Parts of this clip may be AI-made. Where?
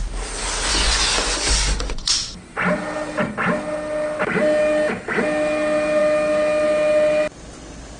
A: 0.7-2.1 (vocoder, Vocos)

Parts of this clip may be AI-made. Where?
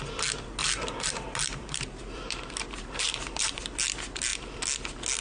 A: 0.6-3.6 (vocoder, BigVGAN v2)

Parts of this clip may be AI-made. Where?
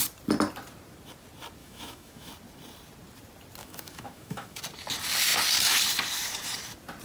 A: 1.6-2.3 (autoencoder, DAC-VAE); 3.6-4.6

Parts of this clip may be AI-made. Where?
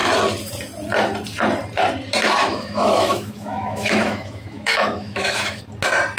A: 2.4-5.6 (autoencoder, DAC-VAE)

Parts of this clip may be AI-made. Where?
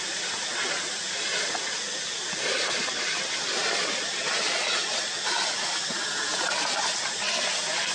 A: none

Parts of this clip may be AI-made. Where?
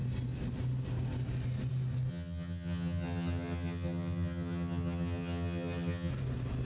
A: 2.1-6.1 (vocoder, HiFi-GAN)